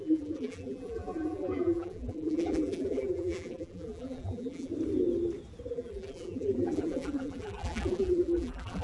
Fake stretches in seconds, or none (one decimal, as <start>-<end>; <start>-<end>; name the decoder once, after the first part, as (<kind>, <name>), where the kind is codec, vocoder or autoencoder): 0.0-4.7 (vocoder, BigVGAN v2); 5.7-8.8